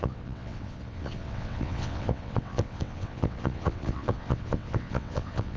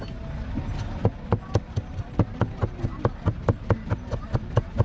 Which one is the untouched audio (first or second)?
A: second